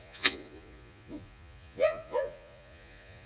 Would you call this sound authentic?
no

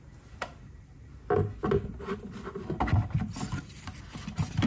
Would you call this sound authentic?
yes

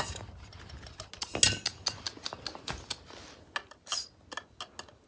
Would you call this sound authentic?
yes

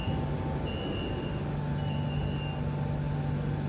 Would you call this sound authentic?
yes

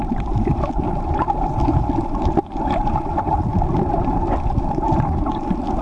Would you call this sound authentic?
yes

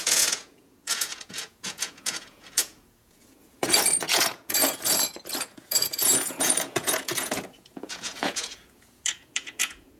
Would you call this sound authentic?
no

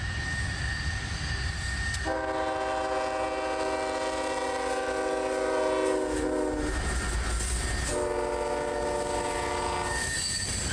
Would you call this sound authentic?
yes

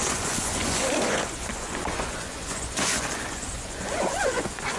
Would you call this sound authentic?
no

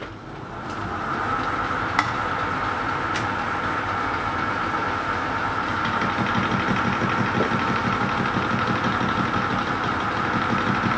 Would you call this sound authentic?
yes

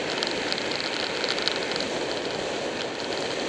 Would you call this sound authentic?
yes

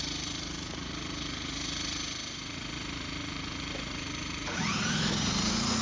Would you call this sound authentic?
no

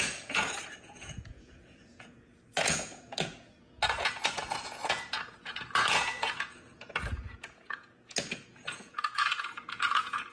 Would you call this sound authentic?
no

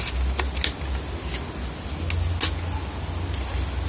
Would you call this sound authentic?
yes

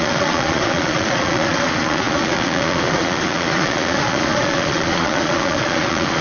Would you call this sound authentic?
no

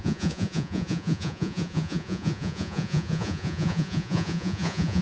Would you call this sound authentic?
no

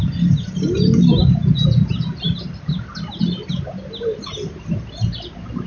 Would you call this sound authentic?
yes